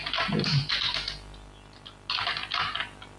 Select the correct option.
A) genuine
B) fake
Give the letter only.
A